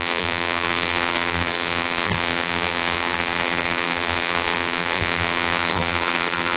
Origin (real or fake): fake